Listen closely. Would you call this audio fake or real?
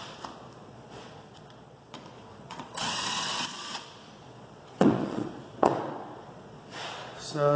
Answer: fake